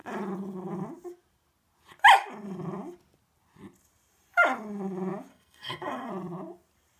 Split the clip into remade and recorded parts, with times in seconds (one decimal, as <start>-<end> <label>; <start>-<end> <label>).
0.0-5.3 recorded; 5.3-6.1 remade; 6.1-7.0 recorded